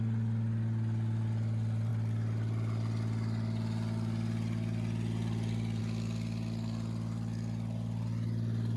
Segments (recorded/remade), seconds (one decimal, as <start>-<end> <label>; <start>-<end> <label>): 0.0-8.8 recorded